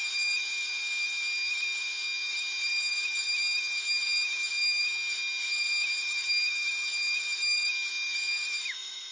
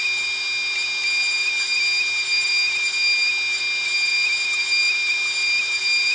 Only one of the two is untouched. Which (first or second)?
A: second